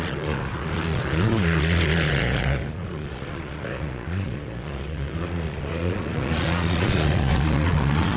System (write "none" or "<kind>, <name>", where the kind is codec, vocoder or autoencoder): vocoder, Vocos